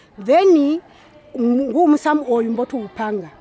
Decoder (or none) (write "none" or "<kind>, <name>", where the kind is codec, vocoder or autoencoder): none